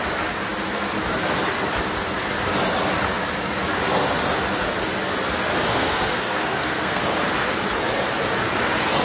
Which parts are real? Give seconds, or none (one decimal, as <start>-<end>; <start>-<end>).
0.0-5.7; 7.0-9.0